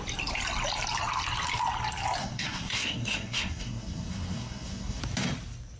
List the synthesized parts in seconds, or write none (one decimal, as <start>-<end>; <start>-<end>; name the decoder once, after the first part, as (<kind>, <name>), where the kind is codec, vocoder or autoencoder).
2.2-5.0 (codec, SNAC)